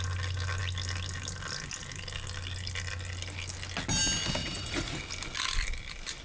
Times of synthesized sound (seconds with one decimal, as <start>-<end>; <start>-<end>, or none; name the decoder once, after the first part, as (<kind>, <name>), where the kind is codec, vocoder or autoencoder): 4.4-5.0 (vocoder, Vocos)